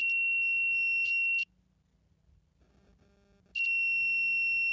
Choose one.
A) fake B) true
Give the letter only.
B